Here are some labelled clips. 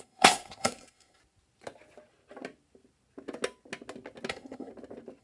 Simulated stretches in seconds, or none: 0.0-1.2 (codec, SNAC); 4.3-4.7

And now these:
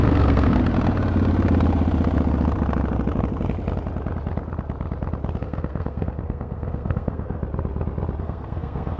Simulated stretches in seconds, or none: 0.0-0.6 (codec, SNAC); 5.4-7.4; 8.2-9.0

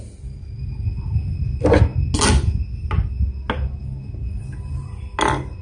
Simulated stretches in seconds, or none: none

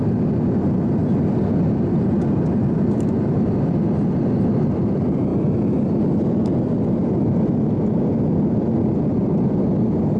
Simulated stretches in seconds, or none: none